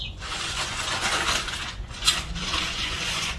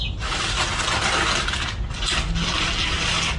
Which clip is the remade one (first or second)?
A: first